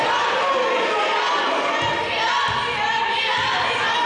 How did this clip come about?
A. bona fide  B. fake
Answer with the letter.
A